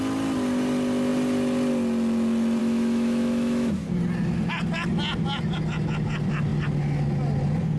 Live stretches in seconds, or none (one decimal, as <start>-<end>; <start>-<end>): 0.0-2.6; 3.8-7.8